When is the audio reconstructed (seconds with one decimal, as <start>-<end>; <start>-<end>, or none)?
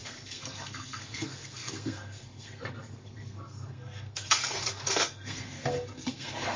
0.0-6.6